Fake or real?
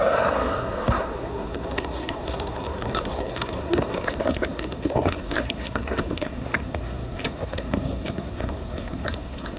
fake